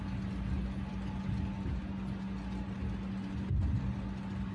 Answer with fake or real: real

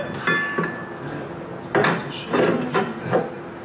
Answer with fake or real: real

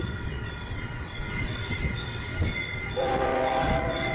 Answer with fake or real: fake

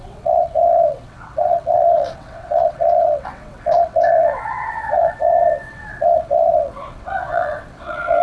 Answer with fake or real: fake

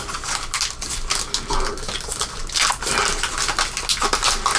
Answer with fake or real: real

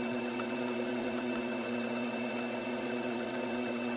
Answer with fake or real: fake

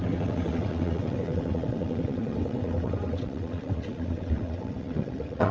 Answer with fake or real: fake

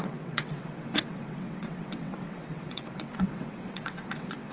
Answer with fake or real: fake